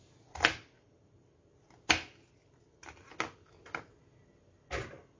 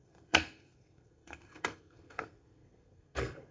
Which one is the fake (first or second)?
second